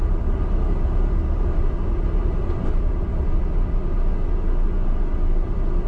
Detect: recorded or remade recorded